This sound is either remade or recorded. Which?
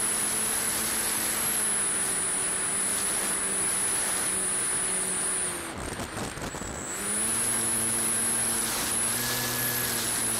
recorded